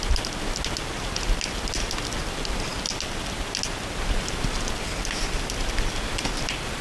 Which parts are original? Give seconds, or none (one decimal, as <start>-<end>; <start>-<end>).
0.0-6.8